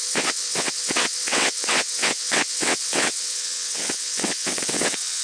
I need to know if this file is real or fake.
fake